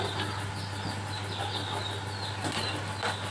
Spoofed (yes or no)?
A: no